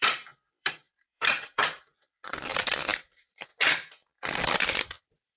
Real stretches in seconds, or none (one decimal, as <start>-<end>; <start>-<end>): 3.5-5.0